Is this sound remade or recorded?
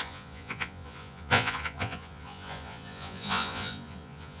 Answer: remade